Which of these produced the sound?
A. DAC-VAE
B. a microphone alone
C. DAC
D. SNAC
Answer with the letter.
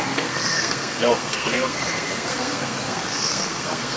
D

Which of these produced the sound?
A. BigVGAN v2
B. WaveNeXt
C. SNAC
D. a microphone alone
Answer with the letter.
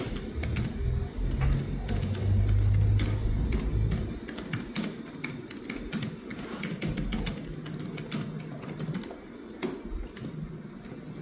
D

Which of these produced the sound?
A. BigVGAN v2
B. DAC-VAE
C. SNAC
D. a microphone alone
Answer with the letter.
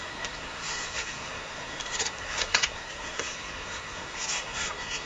C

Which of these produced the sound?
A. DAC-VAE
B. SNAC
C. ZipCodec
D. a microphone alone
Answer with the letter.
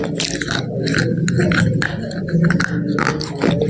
D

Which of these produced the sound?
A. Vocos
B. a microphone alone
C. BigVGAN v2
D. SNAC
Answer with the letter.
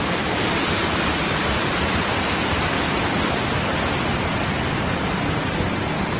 B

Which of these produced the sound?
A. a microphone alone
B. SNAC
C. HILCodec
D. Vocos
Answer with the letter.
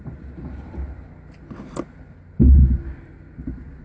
A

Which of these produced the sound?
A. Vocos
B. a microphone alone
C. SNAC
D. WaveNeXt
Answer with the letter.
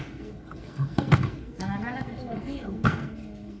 C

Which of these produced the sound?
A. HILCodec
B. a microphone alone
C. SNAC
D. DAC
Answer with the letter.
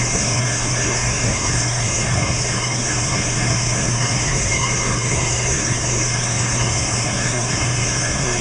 C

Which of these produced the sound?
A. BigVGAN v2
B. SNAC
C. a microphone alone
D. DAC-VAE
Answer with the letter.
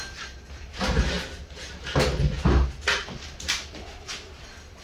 C